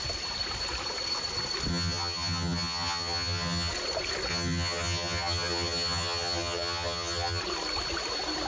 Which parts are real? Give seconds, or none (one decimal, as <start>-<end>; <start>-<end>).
0.0-1.7; 3.7-4.3; 7.4-8.5

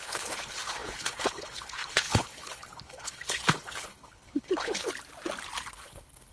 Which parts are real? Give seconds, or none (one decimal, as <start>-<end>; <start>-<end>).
4.9-5.7

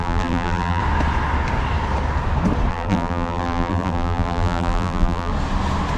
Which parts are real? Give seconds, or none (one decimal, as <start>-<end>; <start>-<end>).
0.8-2.7; 5.3-6.0

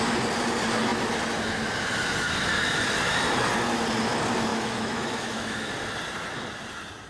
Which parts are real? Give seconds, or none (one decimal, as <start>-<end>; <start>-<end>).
0.0-4.5; 5.7-7.1

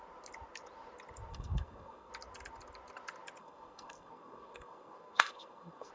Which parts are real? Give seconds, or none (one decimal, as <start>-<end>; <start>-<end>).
0.0-1.3; 2.1-3.4

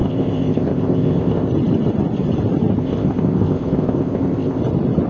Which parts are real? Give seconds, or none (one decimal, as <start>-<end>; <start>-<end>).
1.5-2.8; 4.6-5.1